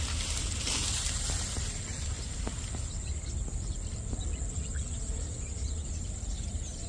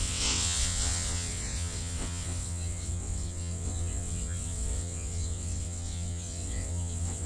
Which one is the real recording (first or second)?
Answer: first